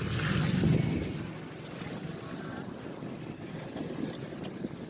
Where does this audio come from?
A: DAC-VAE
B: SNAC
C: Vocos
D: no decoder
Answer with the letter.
D